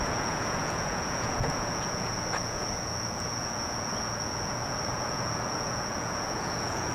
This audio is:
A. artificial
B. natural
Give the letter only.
A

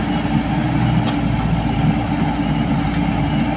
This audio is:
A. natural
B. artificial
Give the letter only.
A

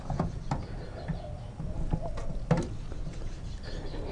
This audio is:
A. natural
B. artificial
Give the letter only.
A